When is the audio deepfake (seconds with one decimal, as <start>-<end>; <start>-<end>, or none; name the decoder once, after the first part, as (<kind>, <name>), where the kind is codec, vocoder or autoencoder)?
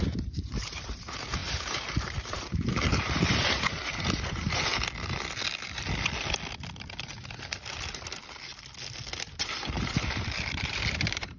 0.0-4.7 (vocoder, BigVGAN v2); 9.4-11.4